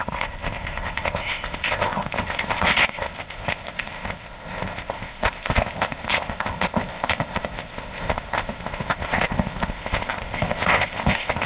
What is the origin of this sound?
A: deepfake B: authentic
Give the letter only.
A